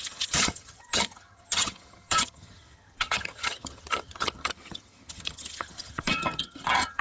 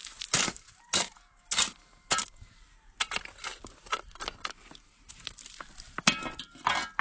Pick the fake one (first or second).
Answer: first